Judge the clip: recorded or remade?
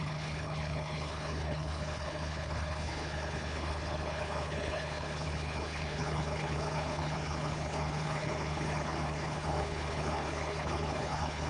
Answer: remade